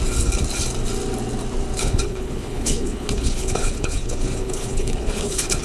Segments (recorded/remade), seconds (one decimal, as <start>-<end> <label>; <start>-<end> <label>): 0.0-1.8 recorded; 1.8-5.6 remade